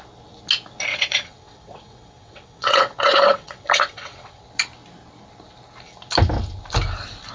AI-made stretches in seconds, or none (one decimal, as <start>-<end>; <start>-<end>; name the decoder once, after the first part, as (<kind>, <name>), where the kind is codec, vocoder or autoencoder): 0.9-4.4 (vocoder, WaveNeXt)